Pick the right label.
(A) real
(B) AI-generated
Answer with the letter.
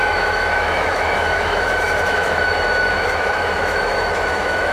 B